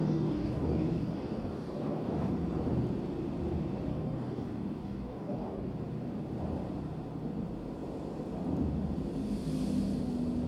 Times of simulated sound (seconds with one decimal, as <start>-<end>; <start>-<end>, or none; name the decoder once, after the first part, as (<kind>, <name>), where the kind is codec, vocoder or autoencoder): 0.0-2.3 (codec, DAC); 3.9-5.7